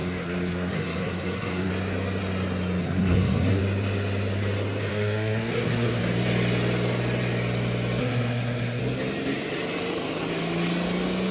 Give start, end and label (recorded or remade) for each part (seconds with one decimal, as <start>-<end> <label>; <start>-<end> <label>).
0.0-1.7 remade; 1.7-2.8 recorded; 2.8-3.6 remade; 3.6-4.9 recorded; 4.9-6.0 remade; 6.0-8.0 recorded; 8.0-8.8 remade; 8.8-11.3 recorded